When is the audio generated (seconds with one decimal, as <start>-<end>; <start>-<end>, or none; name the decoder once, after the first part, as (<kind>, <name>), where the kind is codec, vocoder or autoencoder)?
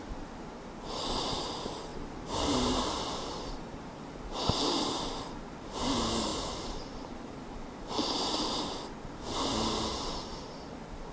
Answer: 1.9-4.2 (vocoder, BigVGAN v2); 6.3-8.6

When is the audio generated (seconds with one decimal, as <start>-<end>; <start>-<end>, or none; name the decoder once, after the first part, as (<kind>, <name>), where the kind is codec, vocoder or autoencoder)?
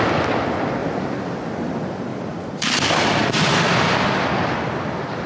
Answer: 0.8-1.6 (vocoder, BigVGAN v2); 2.1-5.3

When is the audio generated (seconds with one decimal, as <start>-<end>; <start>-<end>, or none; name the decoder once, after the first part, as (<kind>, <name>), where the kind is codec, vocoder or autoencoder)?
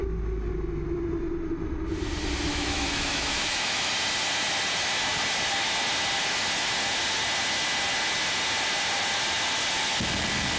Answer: 2.5-3.9 (autoencoder, DAC-VAE)